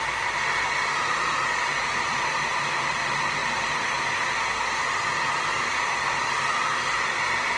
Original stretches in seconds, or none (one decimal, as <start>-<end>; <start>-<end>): 0.0-7.6